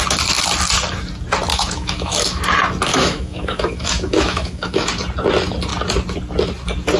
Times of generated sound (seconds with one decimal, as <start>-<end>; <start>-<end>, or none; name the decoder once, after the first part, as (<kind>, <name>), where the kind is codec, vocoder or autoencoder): 1.5-2.4 (autoencoder, DAC-VAE); 2.9-4.9